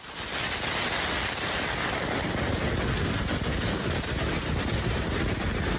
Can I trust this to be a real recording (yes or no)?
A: yes